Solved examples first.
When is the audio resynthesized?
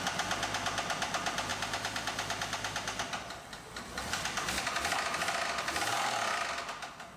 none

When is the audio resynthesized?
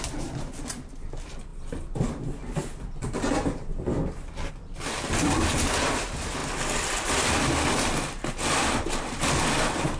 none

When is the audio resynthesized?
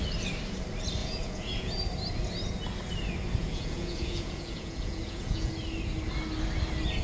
1.0-1.7; 3.4-5.5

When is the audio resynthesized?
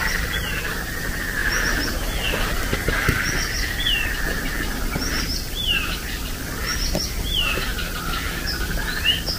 0.0-1.4; 3.0-7.7; 8.6-9.4